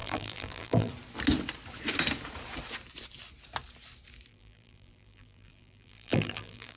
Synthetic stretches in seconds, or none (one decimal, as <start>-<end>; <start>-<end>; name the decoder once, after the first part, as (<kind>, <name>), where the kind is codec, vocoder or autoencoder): 0.0-0.9 (vocoder, BigVGAN v2); 4.3-6.8